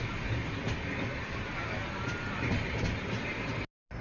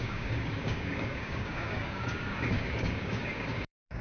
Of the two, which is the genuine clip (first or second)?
first